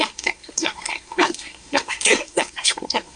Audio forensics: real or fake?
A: fake